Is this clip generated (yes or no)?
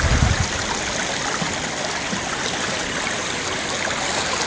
no